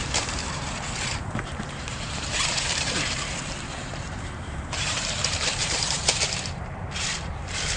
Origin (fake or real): fake